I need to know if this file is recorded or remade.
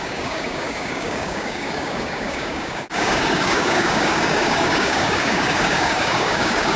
remade